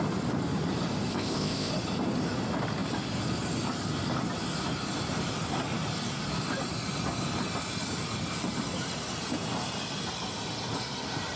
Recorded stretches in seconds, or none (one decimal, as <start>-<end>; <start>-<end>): 0.0-1.1; 1.7-11.4